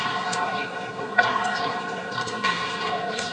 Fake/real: fake